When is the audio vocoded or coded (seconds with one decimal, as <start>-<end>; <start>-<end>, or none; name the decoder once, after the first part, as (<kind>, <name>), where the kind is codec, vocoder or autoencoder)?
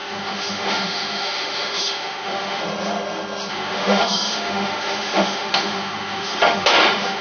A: 0.0-2.6 (autoencoder, DAC-VAE); 3.5-7.2